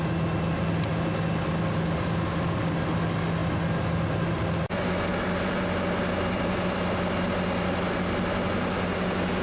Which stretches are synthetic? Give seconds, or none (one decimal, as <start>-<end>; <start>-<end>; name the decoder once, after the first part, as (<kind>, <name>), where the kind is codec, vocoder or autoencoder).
none